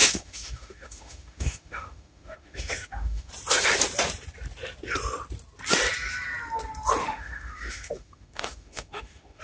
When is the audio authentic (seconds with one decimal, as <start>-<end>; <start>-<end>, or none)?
3.3-7.0